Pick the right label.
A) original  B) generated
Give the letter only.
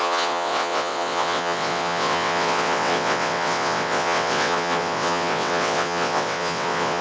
B